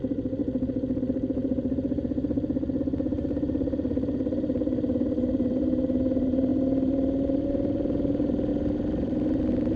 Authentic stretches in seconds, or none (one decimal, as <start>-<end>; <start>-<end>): 0.4-1.0; 6.5-8.5